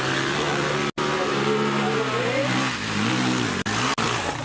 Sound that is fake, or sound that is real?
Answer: real